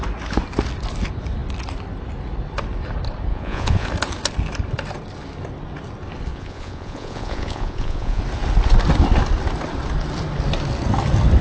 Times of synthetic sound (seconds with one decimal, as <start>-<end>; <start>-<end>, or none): 3.3-3.9; 6.3-8.2